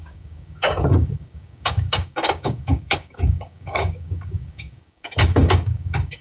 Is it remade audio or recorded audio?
remade